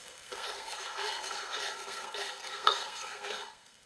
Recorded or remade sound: remade